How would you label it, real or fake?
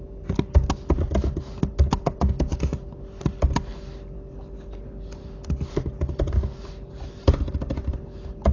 real